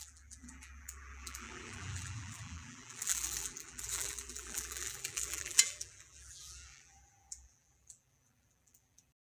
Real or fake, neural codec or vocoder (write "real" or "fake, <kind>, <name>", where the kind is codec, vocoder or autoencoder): fake, vocoder, BigVGAN v2